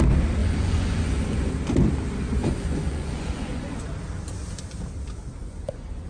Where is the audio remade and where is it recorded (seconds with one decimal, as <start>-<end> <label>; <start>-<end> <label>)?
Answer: 0.0-0.4 recorded; 0.4-1.5 remade; 1.5-2.4 recorded; 2.4-3.8 remade; 3.8-5.4 recorded; 5.4-6.1 remade